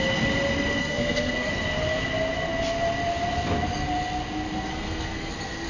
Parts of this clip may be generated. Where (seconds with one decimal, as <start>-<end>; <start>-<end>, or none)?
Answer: 0.8-1.5; 4.7-5.3